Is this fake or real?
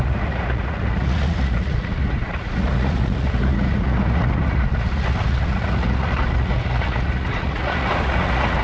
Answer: fake